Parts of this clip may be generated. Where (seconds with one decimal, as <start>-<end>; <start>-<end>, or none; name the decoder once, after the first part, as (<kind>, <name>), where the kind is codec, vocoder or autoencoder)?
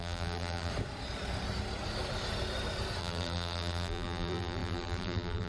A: 0.0-0.7 (vocoder, BigVGAN v2); 3.0-5.5